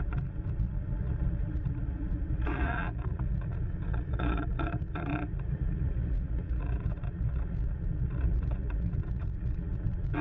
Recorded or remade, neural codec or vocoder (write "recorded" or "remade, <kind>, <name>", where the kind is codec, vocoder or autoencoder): remade, vocoder, Vocos